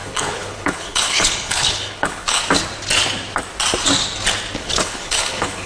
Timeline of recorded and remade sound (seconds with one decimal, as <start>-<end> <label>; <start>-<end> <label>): 0.0-2.4 remade; 2.4-4.6 recorded; 4.6-5.7 remade